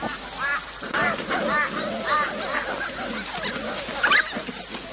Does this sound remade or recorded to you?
recorded